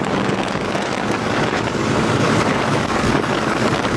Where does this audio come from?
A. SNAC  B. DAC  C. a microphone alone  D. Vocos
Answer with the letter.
B